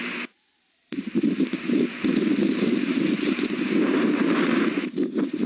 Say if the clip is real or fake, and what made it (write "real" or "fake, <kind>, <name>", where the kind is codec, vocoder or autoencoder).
fake, vocoder, BigVGAN v2